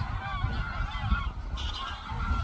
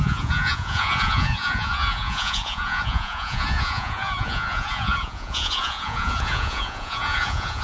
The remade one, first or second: second